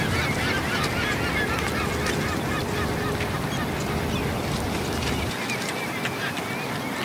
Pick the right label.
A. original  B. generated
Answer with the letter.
A